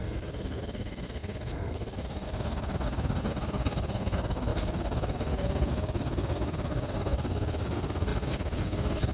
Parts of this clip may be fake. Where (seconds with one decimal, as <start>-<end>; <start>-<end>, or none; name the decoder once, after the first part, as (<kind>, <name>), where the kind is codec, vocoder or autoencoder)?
0.0-9.1 (codec, SNAC)